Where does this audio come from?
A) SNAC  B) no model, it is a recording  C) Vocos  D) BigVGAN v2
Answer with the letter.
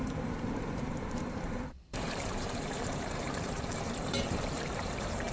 D